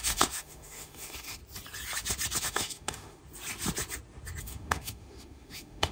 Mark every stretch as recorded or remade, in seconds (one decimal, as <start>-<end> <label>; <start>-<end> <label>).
0.0-1.4 remade; 1.4-2.4 recorded; 2.4-3.2 remade; 3.2-4.4 recorded; 4.4-5.9 remade